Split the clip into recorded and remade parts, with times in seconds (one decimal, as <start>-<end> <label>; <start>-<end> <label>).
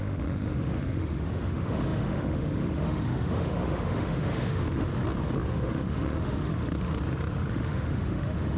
0.0-4.9 remade; 4.9-5.5 recorded; 5.5-6.5 remade; 6.5-7.5 recorded; 7.5-8.6 remade